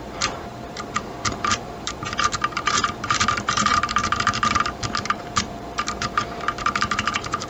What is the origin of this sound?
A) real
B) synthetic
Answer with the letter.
B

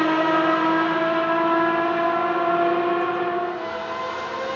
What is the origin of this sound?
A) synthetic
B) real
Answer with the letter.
B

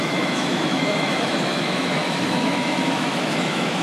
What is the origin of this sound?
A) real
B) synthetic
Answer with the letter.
B